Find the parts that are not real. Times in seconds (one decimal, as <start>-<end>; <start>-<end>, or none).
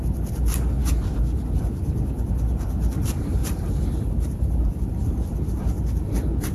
3.4-4.9